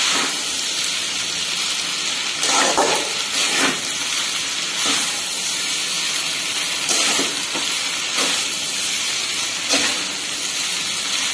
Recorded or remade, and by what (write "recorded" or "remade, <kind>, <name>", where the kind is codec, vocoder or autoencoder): recorded